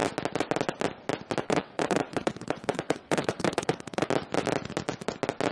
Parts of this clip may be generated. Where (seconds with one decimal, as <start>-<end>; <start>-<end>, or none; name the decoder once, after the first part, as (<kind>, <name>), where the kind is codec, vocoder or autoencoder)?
1.4-4.1 (vocoder, WaveNeXt)